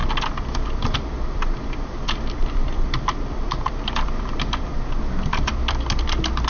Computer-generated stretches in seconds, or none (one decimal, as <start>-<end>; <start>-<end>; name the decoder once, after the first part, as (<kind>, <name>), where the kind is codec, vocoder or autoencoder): 0.0-6.5 (vocoder, BigVGAN v2)